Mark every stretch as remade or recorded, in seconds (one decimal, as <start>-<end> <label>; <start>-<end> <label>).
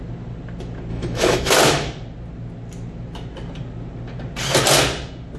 0.0-0.9 recorded; 0.9-1.5 remade; 1.5-5.4 recorded